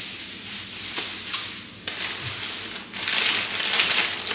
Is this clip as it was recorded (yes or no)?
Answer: yes